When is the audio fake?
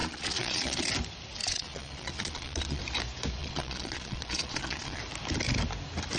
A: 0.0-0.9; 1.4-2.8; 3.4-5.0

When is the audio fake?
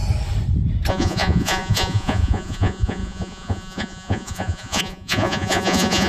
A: 0.9-6.1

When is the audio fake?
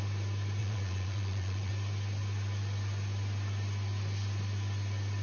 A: 0.6-1.7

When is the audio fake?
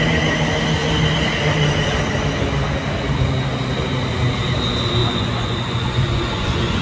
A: 5.0-6.8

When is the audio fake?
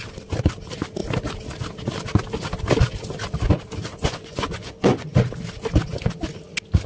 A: 3.9-5.1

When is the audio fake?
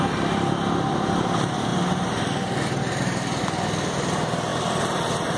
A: none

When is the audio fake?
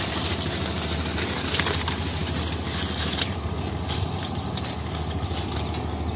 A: none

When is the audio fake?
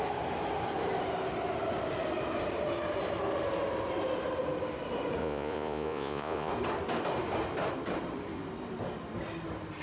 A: 5.2-6.5